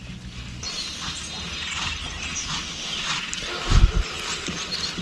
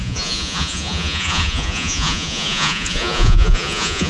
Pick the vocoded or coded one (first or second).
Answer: second